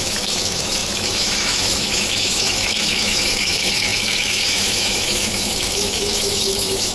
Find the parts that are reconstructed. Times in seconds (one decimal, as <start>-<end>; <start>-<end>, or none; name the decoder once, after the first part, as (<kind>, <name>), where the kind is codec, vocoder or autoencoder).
0.0-6.9 (autoencoder, DAC-VAE)